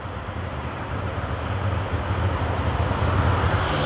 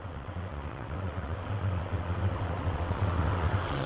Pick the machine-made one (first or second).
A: second